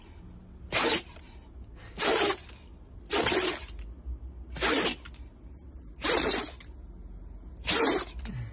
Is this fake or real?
real